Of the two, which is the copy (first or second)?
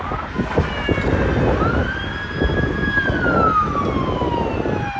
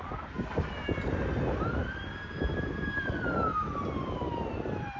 second